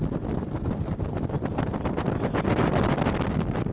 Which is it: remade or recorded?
recorded